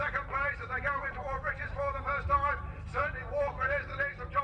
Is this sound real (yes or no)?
yes